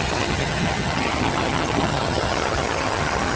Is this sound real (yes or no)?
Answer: no